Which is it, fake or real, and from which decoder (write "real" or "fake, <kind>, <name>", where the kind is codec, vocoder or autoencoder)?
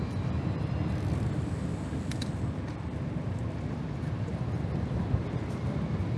real